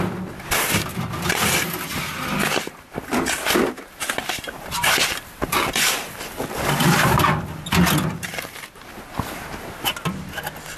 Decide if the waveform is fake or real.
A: real